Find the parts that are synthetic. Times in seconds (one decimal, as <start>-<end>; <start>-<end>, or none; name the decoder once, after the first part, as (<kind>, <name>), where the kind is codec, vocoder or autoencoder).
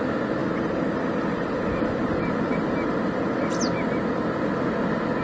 0.4-3.5 (vocoder, BigVGAN v2)